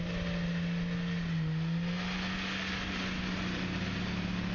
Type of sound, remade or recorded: recorded